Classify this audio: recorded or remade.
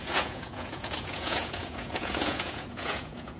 remade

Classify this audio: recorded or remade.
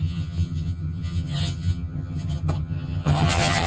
remade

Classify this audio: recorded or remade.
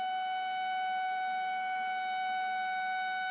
recorded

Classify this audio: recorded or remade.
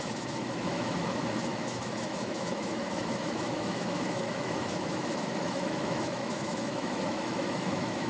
remade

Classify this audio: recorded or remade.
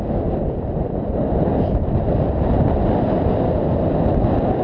recorded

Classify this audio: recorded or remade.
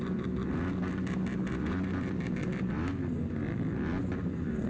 recorded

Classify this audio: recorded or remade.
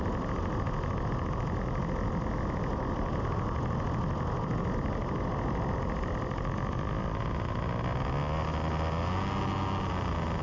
recorded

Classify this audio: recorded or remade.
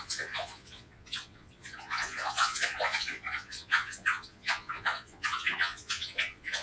remade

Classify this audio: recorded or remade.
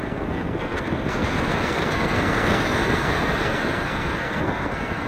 remade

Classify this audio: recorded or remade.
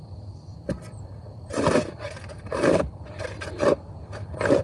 recorded